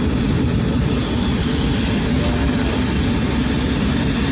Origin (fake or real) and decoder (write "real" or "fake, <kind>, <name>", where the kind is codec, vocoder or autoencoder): real